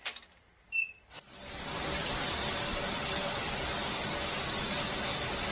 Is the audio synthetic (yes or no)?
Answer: no